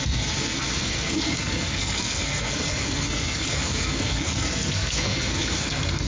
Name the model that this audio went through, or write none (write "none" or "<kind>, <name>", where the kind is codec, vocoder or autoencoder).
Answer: codec, SNAC